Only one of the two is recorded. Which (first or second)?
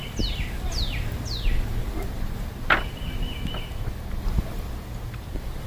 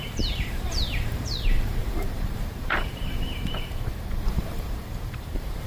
first